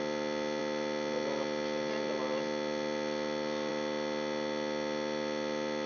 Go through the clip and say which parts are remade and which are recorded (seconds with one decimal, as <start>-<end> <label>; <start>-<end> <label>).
0.0-5.9 recorded